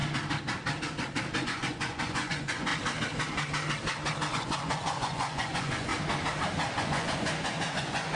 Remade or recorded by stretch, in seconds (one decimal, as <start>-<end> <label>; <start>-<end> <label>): 0.0-1.4 recorded; 1.4-2.7 remade; 2.7-4.3 recorded; 4.3-5.9 remade; 5.9-6.8 recorded; 6.8-8.2 remade